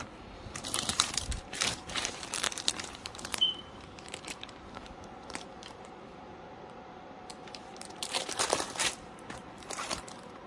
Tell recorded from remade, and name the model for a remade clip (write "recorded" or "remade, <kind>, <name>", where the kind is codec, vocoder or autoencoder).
remade, vocoder, BigVGAN v2